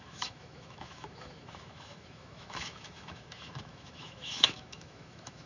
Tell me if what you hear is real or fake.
fake